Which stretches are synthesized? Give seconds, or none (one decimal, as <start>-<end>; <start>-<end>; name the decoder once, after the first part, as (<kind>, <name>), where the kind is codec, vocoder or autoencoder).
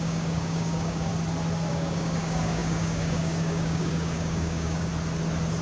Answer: 0.0-1.1 (codec, DAC); 1.7-4.9